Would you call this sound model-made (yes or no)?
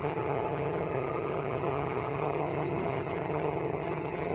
yes